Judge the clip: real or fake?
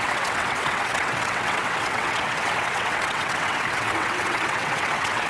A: fake